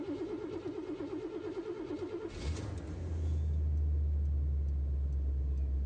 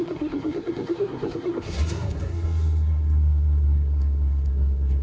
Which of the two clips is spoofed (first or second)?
second